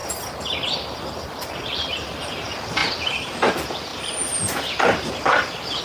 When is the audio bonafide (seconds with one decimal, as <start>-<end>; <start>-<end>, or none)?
0.0-3.9